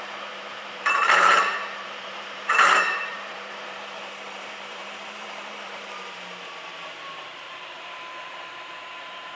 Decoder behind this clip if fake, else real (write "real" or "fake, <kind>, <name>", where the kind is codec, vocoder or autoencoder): fake, vocoder, BigVGAN v2